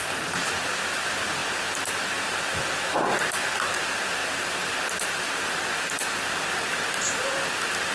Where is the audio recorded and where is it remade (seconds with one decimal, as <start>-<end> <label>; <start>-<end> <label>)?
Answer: 0.0-7.9 recorded